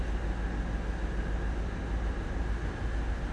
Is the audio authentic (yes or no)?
yes